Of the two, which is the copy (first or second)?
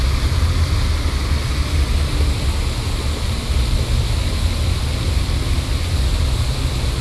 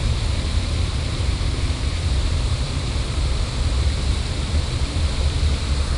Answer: second